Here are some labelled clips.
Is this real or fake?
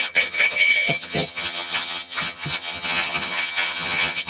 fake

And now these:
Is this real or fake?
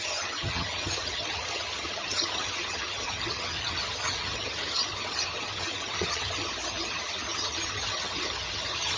fake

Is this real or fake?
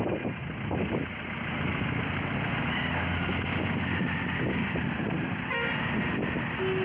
real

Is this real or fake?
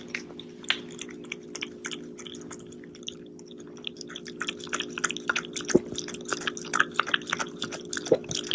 real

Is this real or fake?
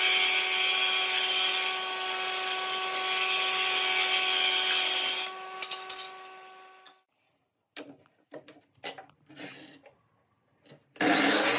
real